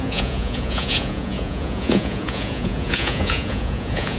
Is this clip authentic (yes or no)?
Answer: no